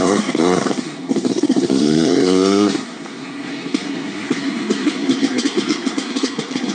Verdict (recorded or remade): remade